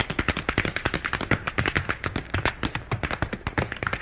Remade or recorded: recorded